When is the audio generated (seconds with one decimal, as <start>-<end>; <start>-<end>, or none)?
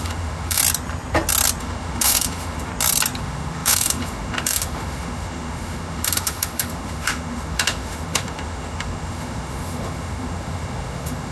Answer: 0.0-0.6; 1.6-2.7; 3.2-11.3